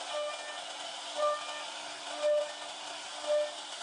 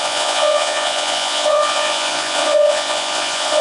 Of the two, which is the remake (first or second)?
second